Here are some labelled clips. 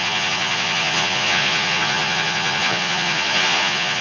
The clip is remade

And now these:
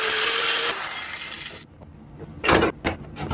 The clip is recorded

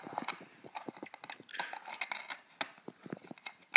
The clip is recorded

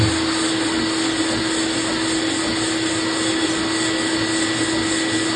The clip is recorded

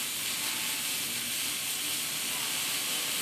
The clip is recorded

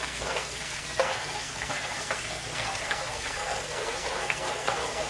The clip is remade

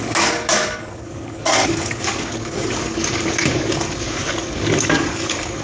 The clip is remade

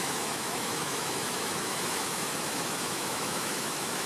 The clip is remade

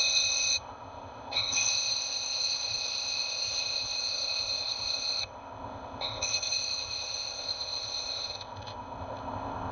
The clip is remade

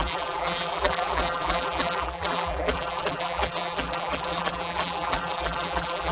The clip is remade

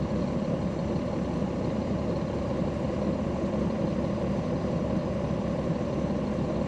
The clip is recorded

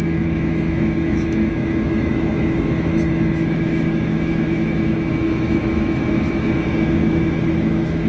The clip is remade